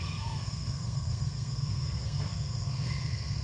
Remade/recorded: remade